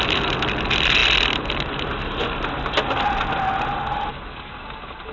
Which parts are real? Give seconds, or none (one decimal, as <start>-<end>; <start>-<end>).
0.0-5.1